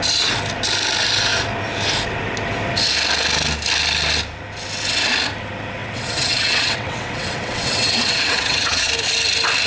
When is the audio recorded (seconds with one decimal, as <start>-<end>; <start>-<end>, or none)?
0.0-5.8; 8.9-9.7